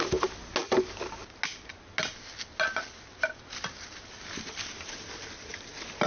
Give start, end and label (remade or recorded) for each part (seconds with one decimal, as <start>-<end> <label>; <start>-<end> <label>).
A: 0.0-6.1 recorded